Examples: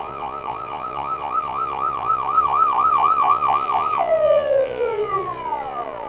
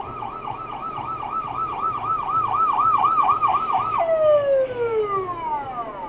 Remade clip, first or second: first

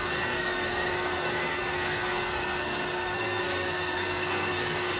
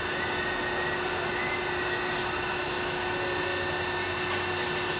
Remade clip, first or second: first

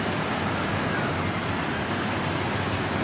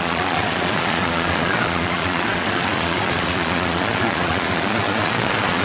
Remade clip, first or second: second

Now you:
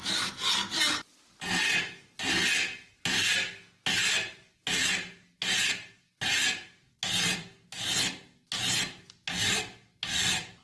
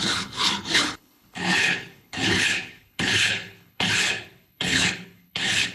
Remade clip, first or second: second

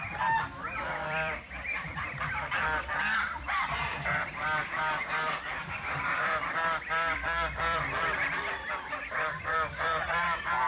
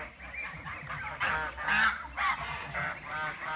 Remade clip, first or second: first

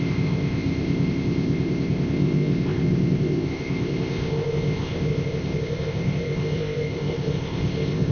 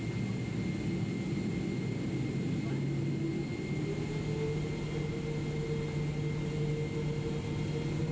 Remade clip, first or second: first